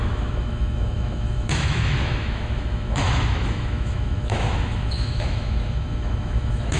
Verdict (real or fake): fake